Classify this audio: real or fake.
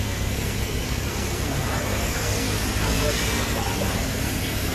fake